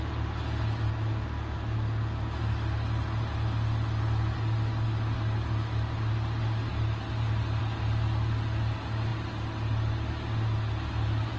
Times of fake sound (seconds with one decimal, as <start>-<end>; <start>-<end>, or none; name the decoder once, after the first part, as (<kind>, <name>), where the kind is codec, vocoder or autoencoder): none